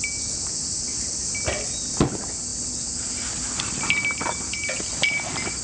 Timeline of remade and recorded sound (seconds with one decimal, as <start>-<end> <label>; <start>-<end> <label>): 0.0-5.6 recorded